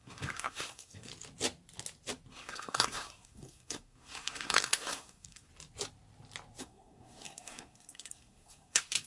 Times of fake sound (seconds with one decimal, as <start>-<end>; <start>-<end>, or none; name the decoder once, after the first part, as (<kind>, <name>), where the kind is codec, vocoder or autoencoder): 0.0-1.1 (codec, SNAC); 2.3-5.5; 6.6-9.1